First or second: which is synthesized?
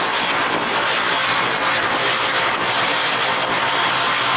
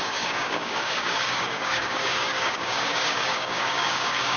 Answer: second